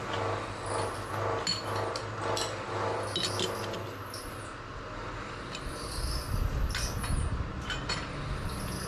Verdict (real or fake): real